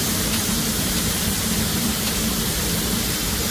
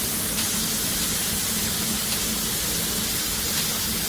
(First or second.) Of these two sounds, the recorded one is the second